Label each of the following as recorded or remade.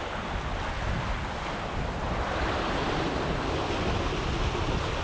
recorded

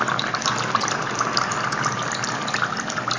recorded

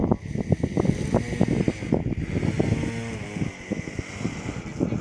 recorded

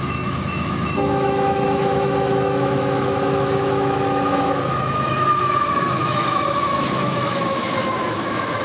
remade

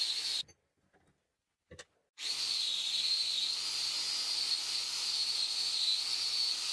recorded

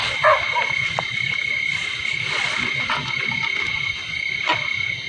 recorded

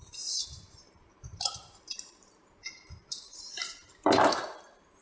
remade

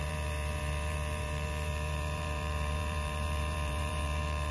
remade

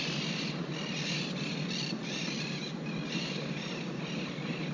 recorded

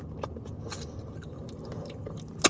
recorded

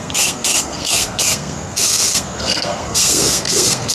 remade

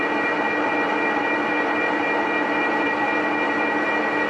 recorded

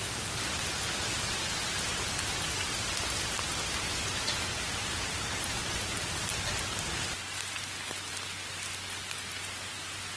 recorded